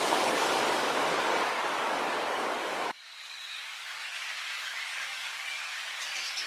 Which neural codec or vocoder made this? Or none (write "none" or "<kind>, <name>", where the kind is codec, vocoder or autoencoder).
codec, DAC